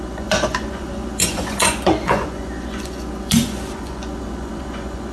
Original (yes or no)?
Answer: no